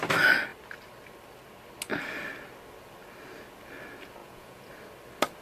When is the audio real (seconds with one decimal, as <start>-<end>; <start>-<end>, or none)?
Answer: 0.0-4.2; 4.7-5.4